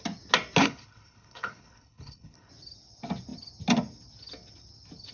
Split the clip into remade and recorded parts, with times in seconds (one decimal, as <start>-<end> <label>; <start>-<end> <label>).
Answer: 0.0-0.6 recorded; 0.6-2.5 remade; 2.5-5.1 recorded